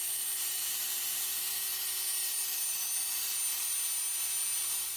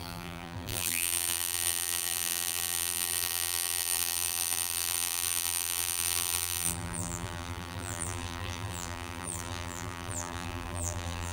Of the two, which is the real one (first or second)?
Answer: first